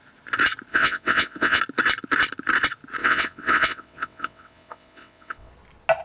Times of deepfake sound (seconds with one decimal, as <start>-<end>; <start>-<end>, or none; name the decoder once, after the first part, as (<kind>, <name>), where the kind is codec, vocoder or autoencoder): 0.7-1.6 (vocoder, WaveNeXt); 3.0-5.5